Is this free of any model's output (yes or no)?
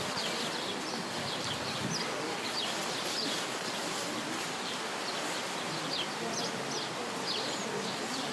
yes